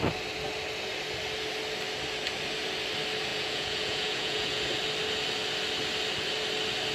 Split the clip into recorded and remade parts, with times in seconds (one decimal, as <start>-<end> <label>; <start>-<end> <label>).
0.0-3.3 recorded; 3.3-4.7 remade; 4.7-6.9 recorded